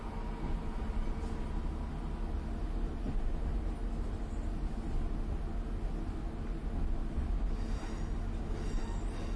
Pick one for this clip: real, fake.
real